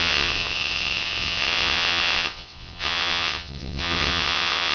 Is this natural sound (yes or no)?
no